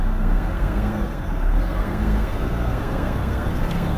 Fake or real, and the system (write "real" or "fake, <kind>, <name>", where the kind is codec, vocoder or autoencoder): fake, codec, SNAC